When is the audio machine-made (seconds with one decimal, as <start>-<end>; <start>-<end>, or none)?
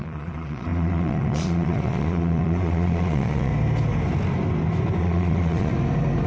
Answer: 0.0-3.5; 5.0-5.7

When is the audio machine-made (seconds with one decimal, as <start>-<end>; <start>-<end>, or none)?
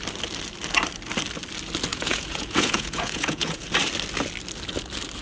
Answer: 1.9-3.7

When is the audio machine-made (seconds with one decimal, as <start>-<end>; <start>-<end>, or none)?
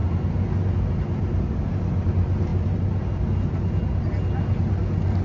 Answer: none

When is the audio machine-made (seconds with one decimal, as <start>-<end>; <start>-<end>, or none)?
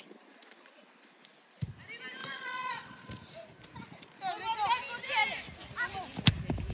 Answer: 2.2-3.1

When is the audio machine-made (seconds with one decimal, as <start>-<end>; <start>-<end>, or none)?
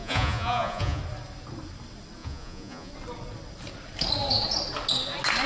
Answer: 0.0-1.0; 2.2-2.9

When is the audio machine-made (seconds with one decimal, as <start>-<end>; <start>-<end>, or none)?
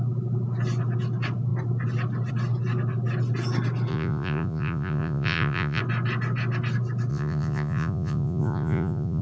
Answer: 3.9-5.8; 7.1-9.2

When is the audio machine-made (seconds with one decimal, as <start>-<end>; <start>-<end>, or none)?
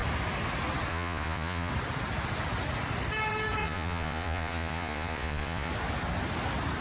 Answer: 0.9-1.7; 3.6-5.7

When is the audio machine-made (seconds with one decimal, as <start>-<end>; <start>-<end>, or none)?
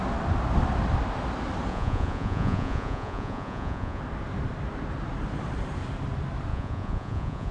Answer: 1.7-4.0; 6.5-7.5